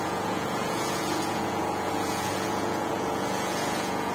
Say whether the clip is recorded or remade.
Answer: remade